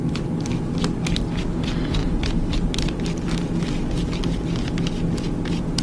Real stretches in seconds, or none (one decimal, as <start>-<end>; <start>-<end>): 0.0-2.0; 3.0-5.8